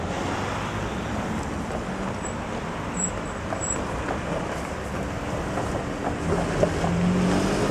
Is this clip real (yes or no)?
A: yes